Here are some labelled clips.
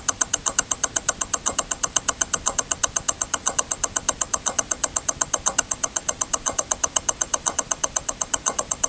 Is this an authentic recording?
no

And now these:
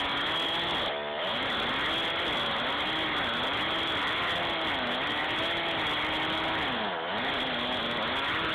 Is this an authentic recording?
yes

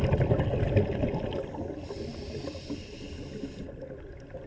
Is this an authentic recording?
yes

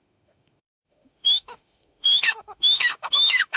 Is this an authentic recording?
no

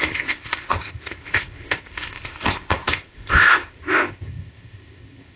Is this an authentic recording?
no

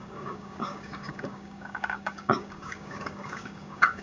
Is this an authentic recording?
no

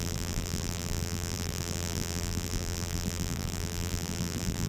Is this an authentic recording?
no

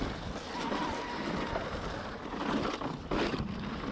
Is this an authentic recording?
yes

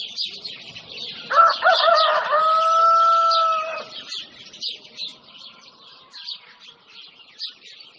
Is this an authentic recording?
yes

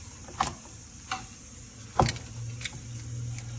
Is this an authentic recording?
yes